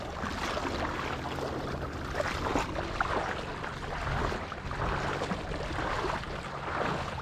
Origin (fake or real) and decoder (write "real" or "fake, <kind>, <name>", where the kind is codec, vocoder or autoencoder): real